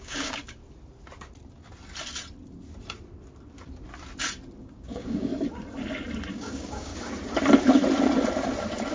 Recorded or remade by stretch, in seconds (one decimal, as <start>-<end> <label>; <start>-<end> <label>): 0.0-0.6 remade; 0.6-4.6 recorded; 4.6-5.3 remade; 5.3-6.3 recorded; 6.3-6.9 remade; 6.9-8.9 recorded